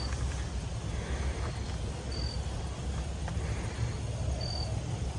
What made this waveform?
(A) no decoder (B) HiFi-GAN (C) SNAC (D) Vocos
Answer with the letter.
A